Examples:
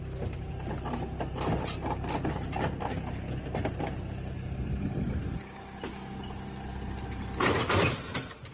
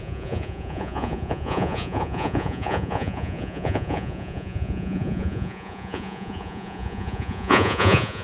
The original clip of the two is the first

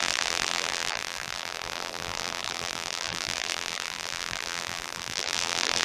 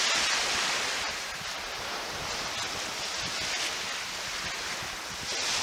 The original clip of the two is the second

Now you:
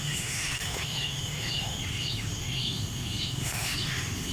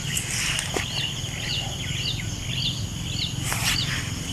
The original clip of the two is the second